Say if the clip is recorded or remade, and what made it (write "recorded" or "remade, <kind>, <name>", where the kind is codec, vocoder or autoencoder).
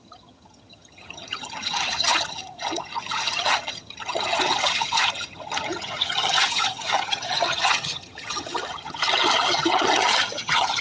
remade, vocoder, HiFi-GAN